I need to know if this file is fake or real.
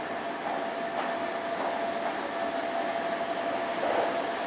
real